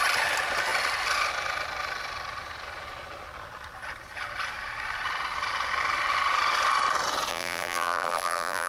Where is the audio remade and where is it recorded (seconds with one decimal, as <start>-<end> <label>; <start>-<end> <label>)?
0.0-7.3 recorded; 7.3-8.7 remade